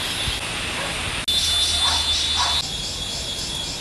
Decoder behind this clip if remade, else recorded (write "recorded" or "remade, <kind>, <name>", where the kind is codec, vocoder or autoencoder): recorded